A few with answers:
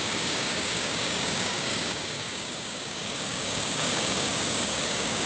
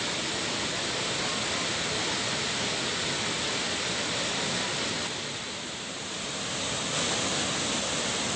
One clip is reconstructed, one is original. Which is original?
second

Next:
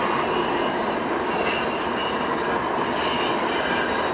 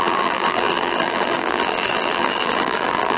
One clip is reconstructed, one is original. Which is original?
first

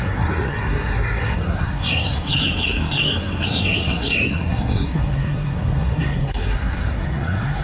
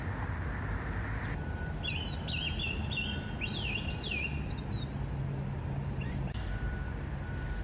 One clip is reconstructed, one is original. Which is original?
second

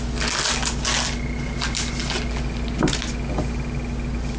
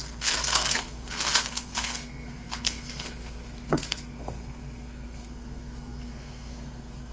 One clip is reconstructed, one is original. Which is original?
first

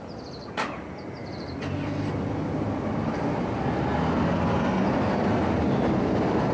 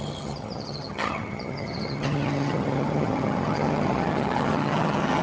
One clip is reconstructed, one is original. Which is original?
first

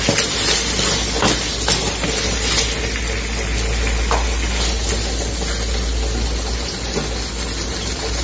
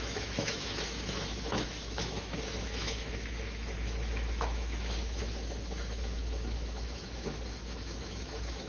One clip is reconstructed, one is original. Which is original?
first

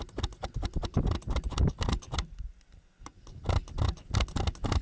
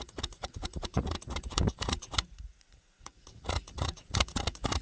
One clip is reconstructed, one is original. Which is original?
first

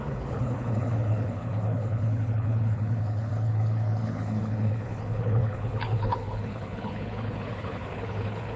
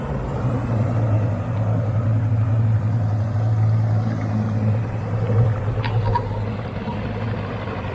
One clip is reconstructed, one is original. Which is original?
second